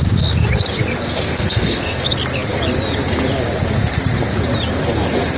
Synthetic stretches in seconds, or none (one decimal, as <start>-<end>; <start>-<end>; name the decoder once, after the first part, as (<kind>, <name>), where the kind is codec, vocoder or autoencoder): 1.1-2.0 (codec, SNAC)